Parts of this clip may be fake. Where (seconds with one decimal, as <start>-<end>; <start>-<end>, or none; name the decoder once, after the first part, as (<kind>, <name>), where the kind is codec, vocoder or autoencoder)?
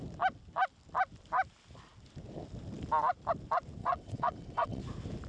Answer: 3.8-4.8 (vocoder, WaveNeXt)